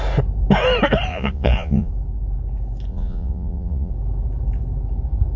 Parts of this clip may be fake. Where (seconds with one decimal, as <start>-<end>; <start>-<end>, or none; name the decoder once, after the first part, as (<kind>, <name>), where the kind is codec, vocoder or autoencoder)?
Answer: 1.1-1.9 (vocoder, Vocos); 2.9-3.9